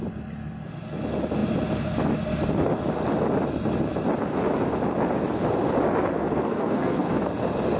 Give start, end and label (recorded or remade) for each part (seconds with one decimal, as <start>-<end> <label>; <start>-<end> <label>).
0.0-6.1 recorded; 6.1-7.1 remade; 7.1-7.8 recorded